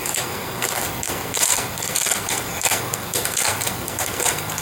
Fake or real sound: fake